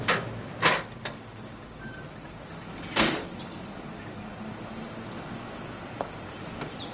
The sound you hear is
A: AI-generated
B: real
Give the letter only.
B